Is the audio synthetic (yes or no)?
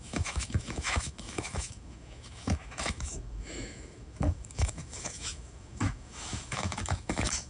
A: yes